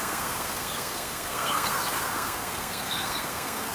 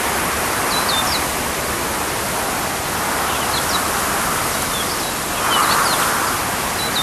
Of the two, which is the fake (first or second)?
first